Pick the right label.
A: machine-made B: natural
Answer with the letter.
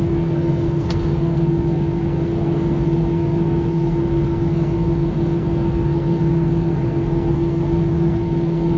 A